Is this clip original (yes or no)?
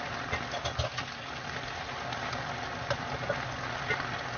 yes